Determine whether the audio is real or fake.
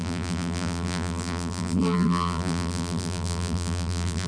fake